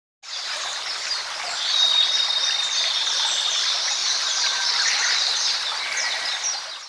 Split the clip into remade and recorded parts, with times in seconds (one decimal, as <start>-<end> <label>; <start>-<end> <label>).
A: 0.0-4.0 recorded; 4.0-5.0 remade; 5.0-6.9 recorded